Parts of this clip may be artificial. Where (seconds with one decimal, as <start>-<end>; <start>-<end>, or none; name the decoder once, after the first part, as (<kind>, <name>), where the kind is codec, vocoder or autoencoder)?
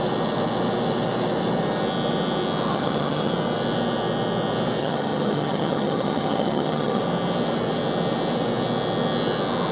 2.7-3.3 (vocoder, HiFi-GAN); 4.8-7.0